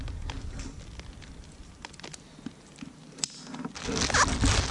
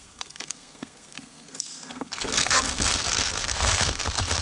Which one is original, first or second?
first